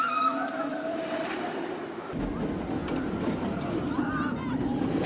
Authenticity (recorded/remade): remade